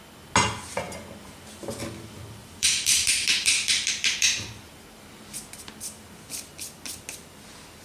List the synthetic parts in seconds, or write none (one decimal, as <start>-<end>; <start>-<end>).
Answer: 2.4-4.5